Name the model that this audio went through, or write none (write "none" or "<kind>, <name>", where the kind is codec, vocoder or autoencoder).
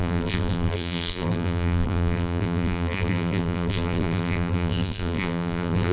vocoder, BigVGAN v2